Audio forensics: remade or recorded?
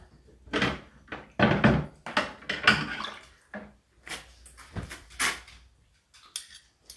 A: recorded